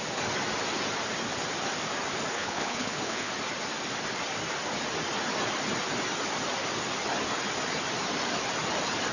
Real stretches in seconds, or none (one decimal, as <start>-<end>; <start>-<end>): 0.0-2.3; 3.3-9.1